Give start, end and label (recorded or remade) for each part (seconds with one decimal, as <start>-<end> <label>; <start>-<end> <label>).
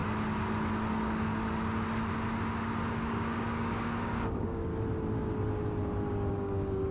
0.0-0.9 recorded; 0.9-1.3 remade; 1.3-2.9 recorded; 2.9-4.7 remade; 4.7-6.3 recorded; 6.3-6.9 remade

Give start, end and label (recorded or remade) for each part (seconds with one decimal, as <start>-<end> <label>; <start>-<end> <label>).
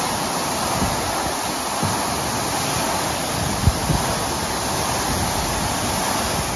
0.0-6.6 recorded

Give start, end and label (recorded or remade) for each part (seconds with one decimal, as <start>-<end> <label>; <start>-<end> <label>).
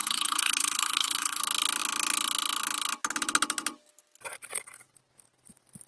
0.0-1.4 remade; 1.4-5.9 recorded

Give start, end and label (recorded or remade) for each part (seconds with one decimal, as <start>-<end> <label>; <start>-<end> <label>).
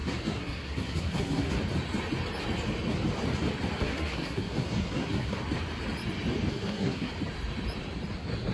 0.0-1.6 remade; 1.6-3.8 recorded; 3.8-5.4 remade; 5.4-6.5 recorded; 6.5-7.1 remade; 7.1-8.5 recorded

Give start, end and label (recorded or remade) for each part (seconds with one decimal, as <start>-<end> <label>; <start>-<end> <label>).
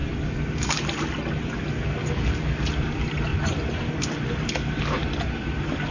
0.0-5.9 recorded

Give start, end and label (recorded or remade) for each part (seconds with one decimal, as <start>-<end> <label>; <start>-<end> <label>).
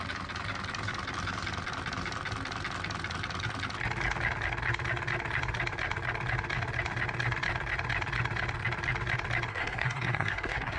0.0-9.5 recorded; 9.5-10.8 remade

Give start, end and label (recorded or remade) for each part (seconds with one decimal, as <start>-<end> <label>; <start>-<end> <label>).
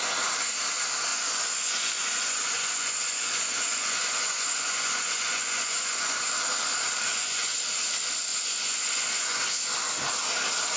0.0-1.1 recorded; 1.1-6.3 remade; 6.3-7.1 recorded; 7.1-7.6 remade; 7.6-8.3 recorded; 8.3-9.4 remade; 9.4-10.8 recorded